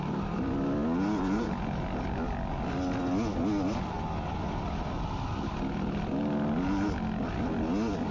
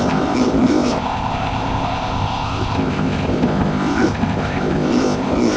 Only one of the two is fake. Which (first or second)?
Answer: second